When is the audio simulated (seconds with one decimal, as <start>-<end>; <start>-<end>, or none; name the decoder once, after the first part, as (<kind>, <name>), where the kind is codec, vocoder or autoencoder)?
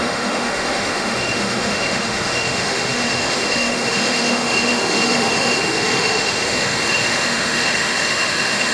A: 0.0-8.7 (autoencoder, DAC-VAE)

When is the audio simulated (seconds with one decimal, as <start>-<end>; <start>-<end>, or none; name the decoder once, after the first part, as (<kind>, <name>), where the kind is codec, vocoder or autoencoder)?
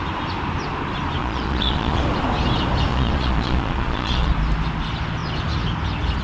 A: 1.2-2.0 (vocoder, Vocos); 2.9-4.3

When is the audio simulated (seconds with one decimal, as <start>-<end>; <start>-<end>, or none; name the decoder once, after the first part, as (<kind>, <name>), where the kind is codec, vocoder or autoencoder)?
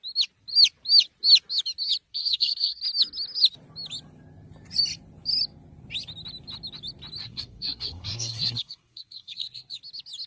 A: 2.1-2.8 (codec, SNAC); 7.2-9.8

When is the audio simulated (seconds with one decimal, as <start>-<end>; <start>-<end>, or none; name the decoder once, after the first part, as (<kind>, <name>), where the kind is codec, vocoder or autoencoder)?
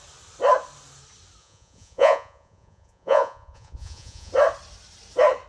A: 1.4-4.3 (vocoder, Vocos)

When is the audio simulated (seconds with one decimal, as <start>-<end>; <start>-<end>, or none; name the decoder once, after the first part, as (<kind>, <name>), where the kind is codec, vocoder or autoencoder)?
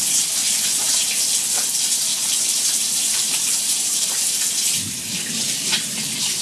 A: 0.4-0.9 (vocoder, BigVGAN v2); 2.1-4.2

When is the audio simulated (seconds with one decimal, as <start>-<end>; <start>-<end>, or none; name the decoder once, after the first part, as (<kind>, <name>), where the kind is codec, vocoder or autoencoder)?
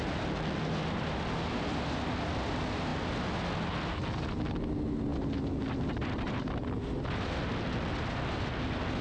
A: none